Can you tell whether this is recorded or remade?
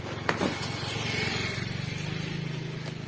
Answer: recorded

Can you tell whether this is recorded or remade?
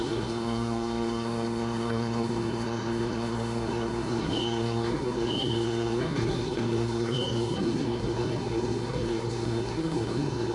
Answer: remade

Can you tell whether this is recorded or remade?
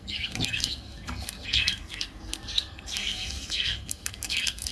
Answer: remade